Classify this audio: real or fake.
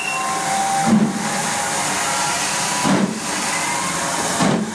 real